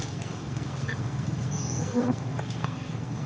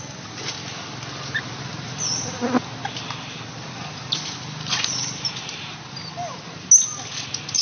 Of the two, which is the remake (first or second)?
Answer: first